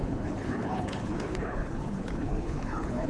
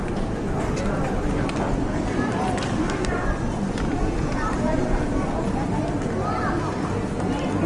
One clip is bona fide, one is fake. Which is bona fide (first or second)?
second